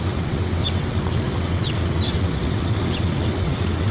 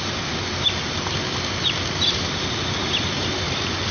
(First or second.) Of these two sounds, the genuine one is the second